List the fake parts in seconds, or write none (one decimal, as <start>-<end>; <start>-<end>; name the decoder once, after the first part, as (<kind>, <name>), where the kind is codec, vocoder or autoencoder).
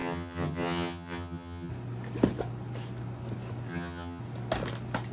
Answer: 0.0-1.7 (vocoder, HiFi-GAN); 3.7-4.2